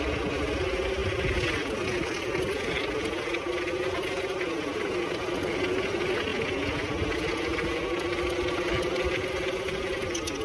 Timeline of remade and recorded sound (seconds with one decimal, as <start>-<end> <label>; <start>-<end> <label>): 0.0-10.4 recorded